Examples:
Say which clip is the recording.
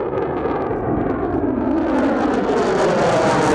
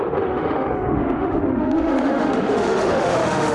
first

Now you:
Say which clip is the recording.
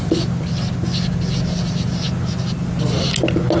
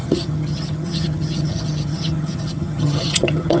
first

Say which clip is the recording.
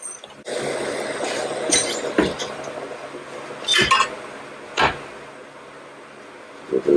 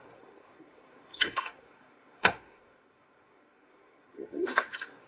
first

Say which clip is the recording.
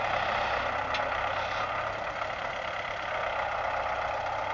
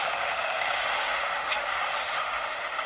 first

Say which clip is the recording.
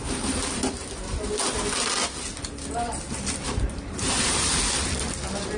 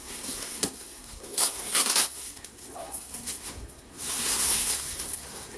first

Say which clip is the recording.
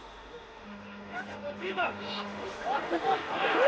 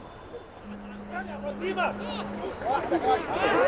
second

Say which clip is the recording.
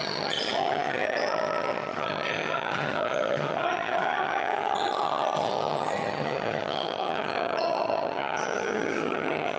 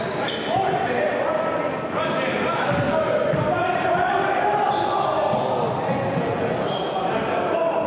second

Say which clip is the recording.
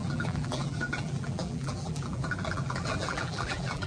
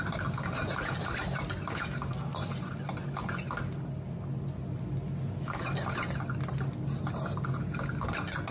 second